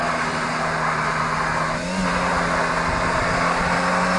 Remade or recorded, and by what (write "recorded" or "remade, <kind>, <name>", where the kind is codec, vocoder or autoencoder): recorded